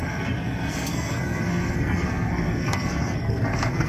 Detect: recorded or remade remade